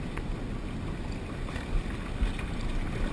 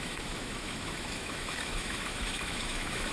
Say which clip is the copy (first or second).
second